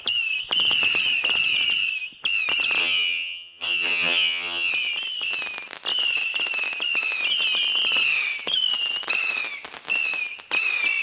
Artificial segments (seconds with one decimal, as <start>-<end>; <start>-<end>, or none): 2.8-4.7

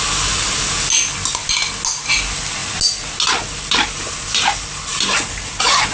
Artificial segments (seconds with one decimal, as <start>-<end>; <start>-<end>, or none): none

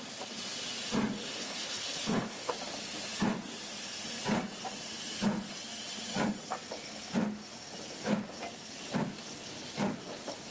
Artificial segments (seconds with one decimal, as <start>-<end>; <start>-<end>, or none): 1.3-2.5

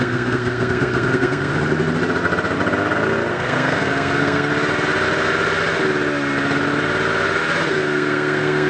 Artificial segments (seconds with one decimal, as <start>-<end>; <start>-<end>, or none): 0.0-1.5; 3.3-4.5; 7.7-8.7

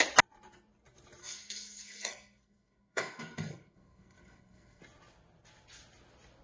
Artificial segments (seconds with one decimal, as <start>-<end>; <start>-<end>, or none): 1.2-4.8

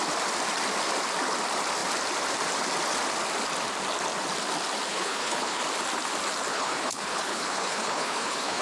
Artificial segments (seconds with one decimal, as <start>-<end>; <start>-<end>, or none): 4.9-5.6; 6.5-8.6

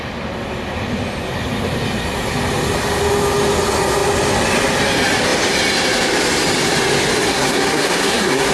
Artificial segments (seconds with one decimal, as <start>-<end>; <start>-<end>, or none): 7.3-8.5